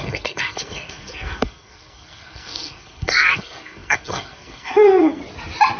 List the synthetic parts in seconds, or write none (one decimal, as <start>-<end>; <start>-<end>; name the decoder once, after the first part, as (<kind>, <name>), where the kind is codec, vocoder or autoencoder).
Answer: 0.0-5.2 (codec, SNAC)